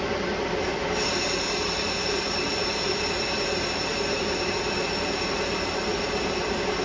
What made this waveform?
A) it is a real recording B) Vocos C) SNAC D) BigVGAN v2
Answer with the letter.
D